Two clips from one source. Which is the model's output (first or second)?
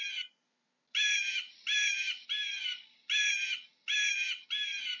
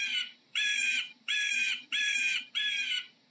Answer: second